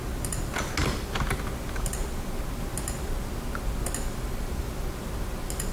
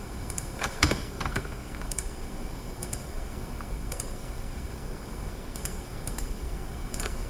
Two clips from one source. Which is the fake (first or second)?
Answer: second